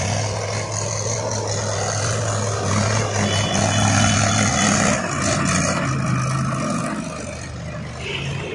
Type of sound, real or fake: real